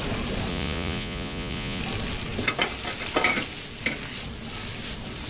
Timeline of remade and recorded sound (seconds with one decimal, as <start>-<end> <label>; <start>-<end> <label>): 0.0-0.5 recorded; 0.5-1.8 remade; 1.8-5.3 recorded